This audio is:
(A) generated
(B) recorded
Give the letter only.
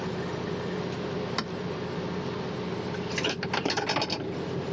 B